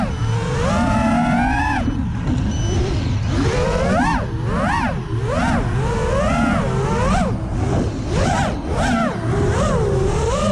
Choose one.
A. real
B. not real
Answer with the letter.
A